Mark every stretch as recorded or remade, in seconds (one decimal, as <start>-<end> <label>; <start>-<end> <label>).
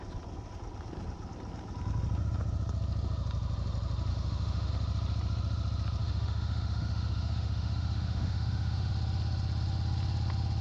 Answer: 0.0-4.1 recorded; 4.1-4.7 remade; 4.7-6.0 recorded; 6.0-8.9 remade; 8.9-10.6 recorded